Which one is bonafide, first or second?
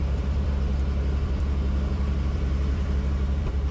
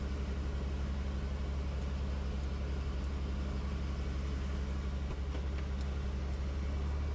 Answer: second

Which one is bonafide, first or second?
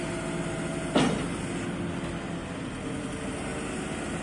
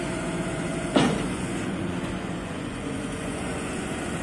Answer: first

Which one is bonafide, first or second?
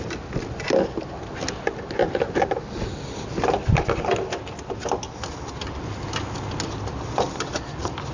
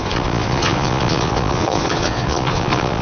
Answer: first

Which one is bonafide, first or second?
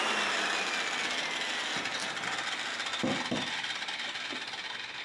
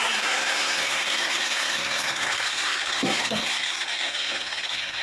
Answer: first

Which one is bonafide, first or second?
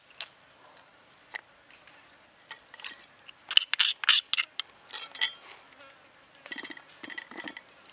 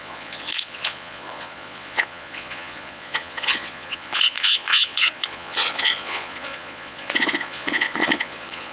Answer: first